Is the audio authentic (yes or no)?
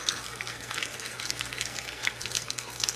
no